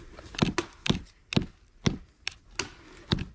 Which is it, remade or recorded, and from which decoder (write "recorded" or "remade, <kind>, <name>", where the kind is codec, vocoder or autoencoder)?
recorded